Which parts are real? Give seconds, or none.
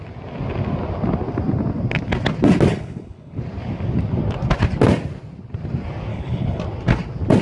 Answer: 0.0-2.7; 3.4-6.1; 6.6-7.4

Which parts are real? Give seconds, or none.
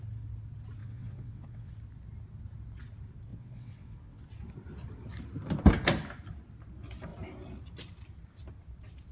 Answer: 0.0-0.8; 1.7-3.3; 4.2-9.1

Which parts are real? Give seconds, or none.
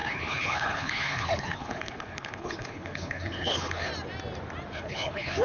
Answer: 3.9-4.7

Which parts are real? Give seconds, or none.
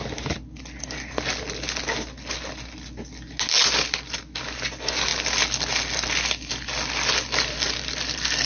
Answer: 0.0-8.5